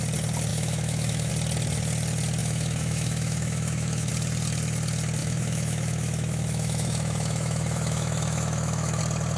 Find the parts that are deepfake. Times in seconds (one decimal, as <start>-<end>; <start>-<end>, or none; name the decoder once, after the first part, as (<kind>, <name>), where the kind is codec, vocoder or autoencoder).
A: 0.5-1.3 (autoencoder, DAC-VAE); 2.4-4.1; 5.2-9.0